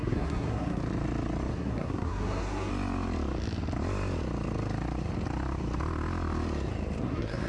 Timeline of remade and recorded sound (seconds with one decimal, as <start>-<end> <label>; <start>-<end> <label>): 0.0-0.8 remade; 0.8-1.5 recorded; 1.5-2.7 remade; 2.7-7.0 recorded; 7.0-7.5 remade